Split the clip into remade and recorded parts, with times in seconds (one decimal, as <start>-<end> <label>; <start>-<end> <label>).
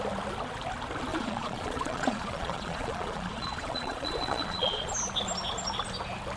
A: 0.0-1.1 recorded; 1.1-4.9 remade; 4.9-6.4 recorded